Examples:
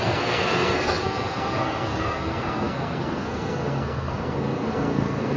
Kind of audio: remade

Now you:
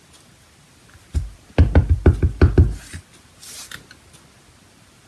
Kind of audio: recorded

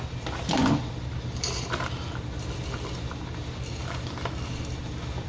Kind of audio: recorded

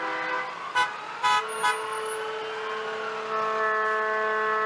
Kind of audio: recorded